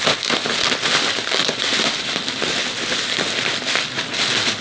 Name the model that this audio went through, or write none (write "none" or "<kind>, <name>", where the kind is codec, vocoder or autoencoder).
none